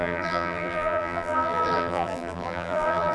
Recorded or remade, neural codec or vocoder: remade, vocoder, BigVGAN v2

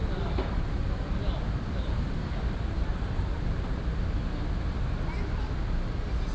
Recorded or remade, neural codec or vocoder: recorded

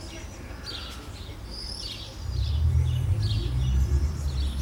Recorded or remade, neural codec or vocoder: recorded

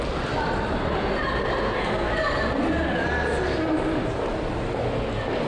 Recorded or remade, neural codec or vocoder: recorded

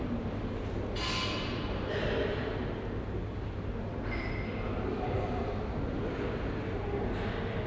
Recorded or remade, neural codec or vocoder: recorded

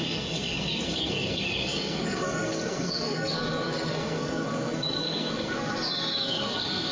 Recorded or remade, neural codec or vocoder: remade, codec, SNAC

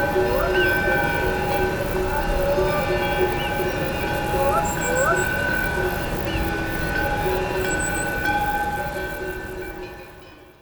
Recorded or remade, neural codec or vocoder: recorded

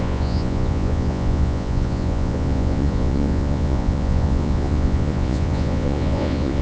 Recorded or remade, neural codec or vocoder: remade, vocoder, Vocos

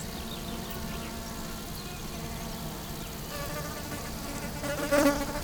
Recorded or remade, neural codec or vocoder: recorded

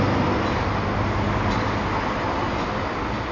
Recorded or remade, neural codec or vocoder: recorded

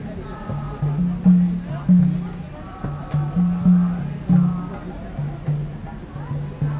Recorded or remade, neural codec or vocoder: recorded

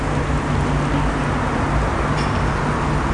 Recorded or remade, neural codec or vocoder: recorded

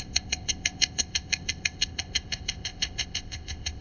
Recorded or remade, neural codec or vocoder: remade, codec, ZipCodec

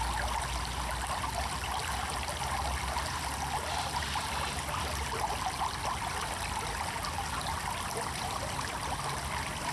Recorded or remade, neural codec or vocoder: recorded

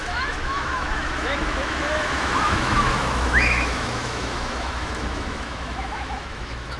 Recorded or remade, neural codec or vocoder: remade, autoencoder, DAC-VAE